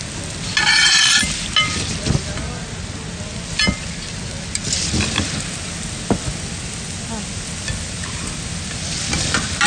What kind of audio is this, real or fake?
real